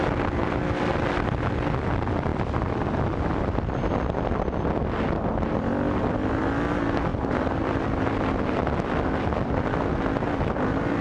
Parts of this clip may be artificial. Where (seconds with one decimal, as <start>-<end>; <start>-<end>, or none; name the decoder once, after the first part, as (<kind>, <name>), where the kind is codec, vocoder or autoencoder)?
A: none